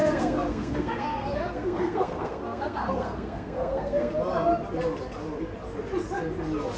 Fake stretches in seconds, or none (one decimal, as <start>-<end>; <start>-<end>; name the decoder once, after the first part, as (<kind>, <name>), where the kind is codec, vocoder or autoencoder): 0.0-4.1 (codec, SNAC)